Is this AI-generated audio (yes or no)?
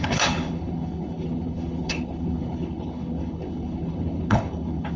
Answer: yes